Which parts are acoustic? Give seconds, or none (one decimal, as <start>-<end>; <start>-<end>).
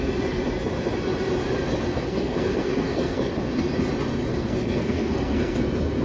0.0-1.9; 3.3-4.3; 5.6-6.0